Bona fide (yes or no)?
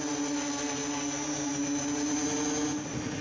yes